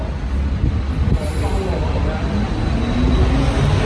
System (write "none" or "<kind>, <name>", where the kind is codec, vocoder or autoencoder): none